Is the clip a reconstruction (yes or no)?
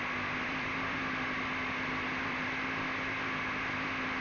yes